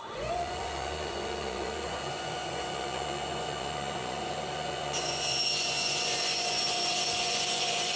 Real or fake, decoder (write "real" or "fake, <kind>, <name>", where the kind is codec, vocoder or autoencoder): fake, vocoder, Vocos